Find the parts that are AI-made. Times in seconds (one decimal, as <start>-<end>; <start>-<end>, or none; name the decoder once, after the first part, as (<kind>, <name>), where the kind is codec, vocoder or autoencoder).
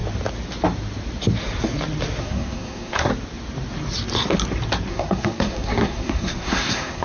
2.2-3.1 (codec, SNAC); 4.9-7.0